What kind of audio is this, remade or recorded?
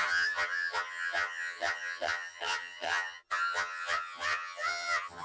remade